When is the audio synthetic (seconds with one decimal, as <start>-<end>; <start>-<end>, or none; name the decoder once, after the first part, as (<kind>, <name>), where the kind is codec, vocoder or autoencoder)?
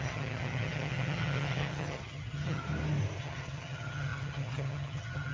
0.0-2.6 (vocoder, HiFi-GAN); 3.2-5.3